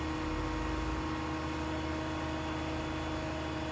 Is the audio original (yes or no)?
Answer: yes